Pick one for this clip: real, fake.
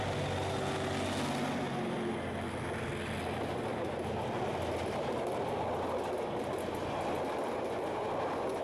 real